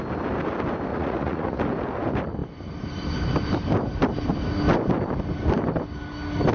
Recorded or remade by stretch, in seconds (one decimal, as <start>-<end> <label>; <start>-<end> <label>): 0.0-0.9 recorded; 0.9-1.6 remade; 1.6-6.5 recorded